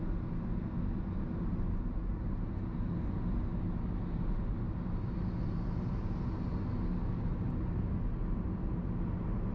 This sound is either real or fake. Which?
real